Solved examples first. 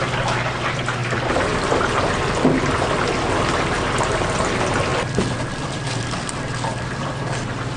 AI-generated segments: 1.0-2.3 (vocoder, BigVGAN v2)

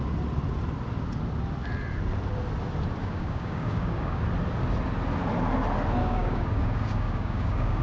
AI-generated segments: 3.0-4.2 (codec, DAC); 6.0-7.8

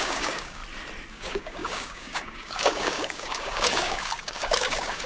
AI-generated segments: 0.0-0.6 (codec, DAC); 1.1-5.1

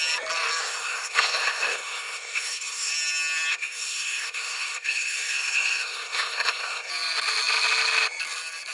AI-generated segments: 0.6-2.9 (codec, SNAC); 3.5-6.9

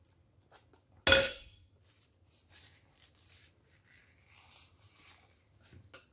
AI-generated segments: 1.2-1.7 (codec, SNAC)

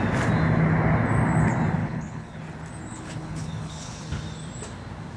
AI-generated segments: 1.8-2.4 (codec, HILCodec); 2.9-4.0